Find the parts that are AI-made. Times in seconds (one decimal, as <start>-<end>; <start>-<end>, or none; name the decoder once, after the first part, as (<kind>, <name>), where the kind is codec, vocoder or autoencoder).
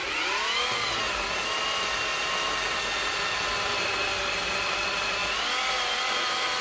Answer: none